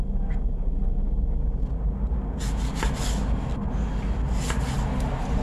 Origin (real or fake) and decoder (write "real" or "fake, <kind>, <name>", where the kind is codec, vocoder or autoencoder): real